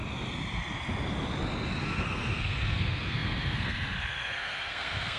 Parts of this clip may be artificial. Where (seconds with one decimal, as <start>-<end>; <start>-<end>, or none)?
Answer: 1.8-5.2